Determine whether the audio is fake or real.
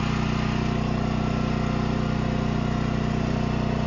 real